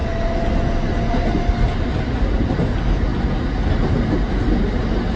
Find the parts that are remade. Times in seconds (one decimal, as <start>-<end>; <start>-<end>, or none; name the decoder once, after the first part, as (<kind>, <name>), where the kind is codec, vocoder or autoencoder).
none